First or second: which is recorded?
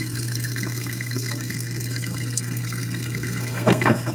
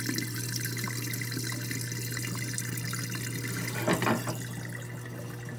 second